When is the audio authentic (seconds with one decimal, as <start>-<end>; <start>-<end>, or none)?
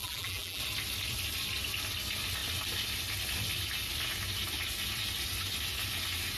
0.6-6.4